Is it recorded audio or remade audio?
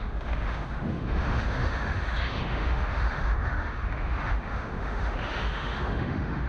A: remade